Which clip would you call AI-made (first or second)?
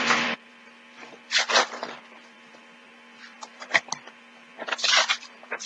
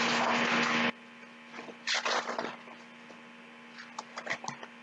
first